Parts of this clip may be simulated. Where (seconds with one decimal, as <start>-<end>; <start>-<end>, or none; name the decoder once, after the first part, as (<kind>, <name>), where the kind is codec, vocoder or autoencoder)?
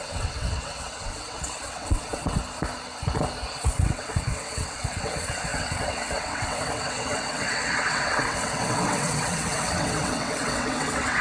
0.0-2.4 (vocoder, WaveNeXt); 3.5-11.2